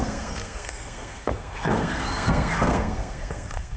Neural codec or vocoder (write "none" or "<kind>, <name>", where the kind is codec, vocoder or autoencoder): codec, SNAC